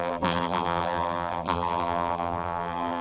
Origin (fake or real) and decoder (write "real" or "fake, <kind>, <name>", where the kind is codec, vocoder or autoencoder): fake, vocoder, BigVGAN v2